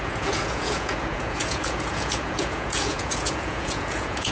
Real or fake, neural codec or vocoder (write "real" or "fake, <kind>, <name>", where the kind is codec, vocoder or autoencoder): fake, vocoder, Vocos